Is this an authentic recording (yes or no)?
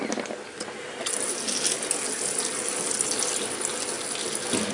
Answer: yes